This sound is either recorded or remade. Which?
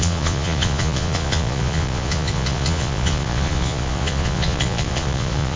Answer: remade